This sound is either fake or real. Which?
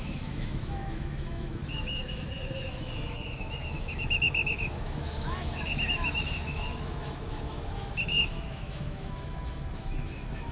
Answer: fake